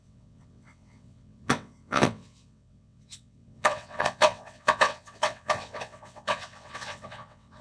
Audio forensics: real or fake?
fake